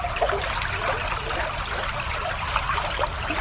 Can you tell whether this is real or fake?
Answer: real